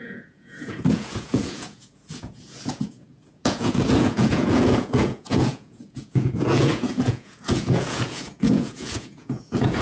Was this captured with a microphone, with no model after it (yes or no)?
no